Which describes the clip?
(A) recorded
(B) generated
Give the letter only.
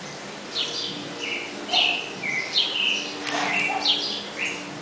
A